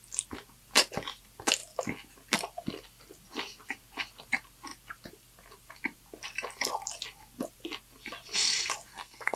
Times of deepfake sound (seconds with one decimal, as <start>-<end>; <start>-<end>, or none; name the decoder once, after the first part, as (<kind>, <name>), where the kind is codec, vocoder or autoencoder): 8.9-9.4 (codec, SNAC)